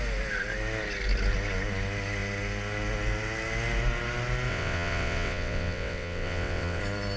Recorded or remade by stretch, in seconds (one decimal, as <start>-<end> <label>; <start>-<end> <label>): 0.0-4.5 recorded; 4.5-6.8 remade; 6.8-7.2 recorded